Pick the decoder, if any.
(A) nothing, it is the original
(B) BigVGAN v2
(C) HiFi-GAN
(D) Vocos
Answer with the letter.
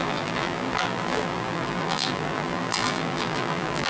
B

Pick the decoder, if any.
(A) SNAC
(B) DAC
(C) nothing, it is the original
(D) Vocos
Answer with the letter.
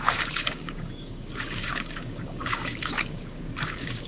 B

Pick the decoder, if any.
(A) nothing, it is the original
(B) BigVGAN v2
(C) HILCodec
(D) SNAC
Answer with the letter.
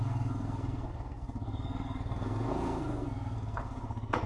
D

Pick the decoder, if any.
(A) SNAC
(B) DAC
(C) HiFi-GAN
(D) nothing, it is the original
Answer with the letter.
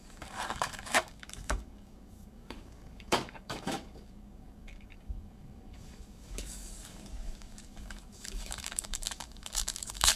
B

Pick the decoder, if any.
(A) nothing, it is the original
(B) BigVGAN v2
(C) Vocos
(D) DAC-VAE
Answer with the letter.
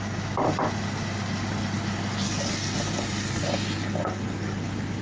A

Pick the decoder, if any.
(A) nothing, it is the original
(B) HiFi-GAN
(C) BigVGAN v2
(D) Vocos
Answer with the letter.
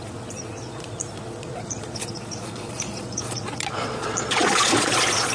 D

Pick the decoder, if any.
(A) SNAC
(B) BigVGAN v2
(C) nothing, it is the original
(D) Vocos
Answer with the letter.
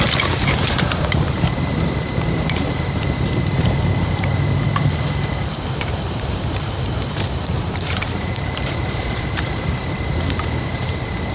B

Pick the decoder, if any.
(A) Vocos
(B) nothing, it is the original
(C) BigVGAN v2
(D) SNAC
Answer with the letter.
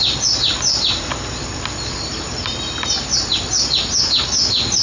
C